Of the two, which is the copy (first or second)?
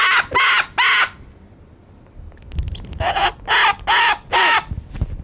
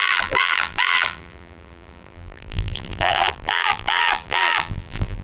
second